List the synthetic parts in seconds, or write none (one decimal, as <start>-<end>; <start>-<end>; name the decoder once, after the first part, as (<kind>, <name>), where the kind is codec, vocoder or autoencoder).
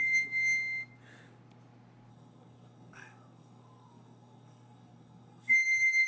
2.1-6.1 (codec, SNAC)